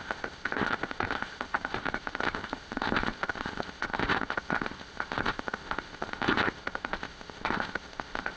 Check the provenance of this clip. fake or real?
fake